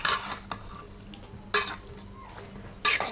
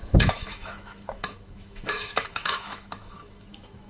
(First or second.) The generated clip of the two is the second